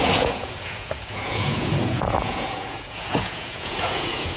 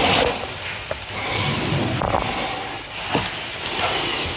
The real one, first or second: second